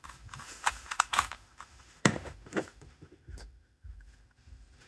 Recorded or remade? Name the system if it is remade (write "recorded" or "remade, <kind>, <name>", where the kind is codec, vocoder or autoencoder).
remade, autoencoder, DAC-VAE